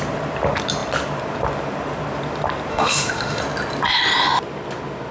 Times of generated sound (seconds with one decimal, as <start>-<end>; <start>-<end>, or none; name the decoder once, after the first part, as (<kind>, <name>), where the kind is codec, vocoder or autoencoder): 2.7-3.4 (autoencoder, DAC-VAE)